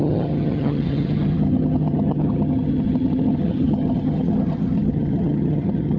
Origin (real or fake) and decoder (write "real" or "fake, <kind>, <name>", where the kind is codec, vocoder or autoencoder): fake, vocoder, HiFi-GAN